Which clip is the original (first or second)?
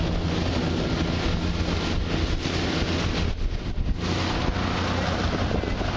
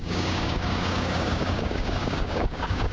first